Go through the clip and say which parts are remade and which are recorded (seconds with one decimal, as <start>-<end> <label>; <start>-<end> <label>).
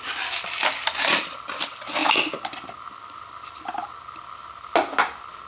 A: 0.0-5.5 recorded